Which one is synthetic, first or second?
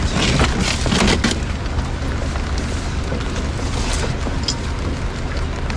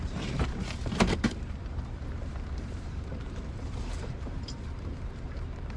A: second